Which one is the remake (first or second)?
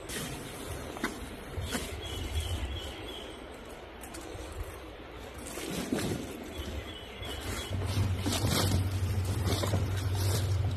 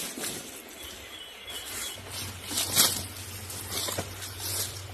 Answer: first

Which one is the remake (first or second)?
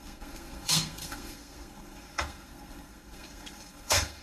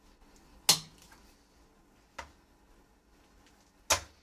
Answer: first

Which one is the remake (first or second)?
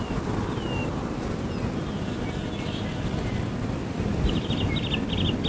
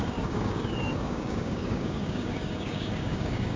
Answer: second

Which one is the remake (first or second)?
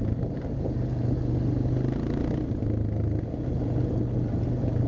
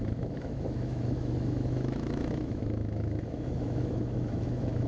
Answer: second